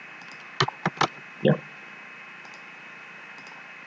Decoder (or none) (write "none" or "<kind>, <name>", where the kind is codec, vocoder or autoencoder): none